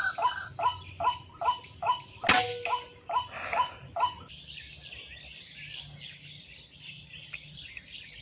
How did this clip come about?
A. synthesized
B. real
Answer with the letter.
B